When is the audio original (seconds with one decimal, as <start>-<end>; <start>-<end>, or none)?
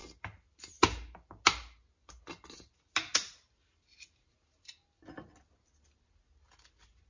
0.0-7.1